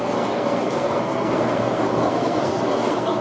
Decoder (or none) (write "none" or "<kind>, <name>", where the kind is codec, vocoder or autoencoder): codec, SNAC